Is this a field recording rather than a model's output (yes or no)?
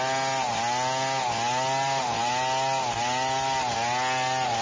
yes